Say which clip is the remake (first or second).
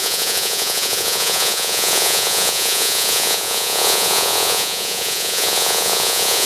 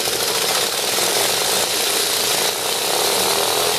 first